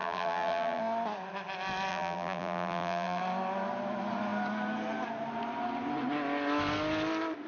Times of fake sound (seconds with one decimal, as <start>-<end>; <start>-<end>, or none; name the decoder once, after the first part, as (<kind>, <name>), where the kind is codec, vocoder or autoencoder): 0.0-0.8 (vocoder, BigVGAN v2); 1.9-3.2